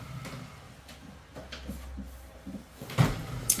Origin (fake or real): real